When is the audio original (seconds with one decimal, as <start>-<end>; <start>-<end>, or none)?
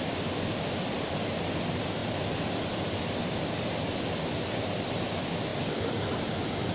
0.0-6.7